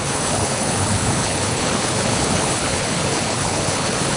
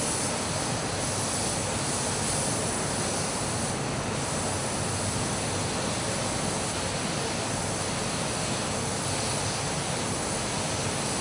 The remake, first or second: first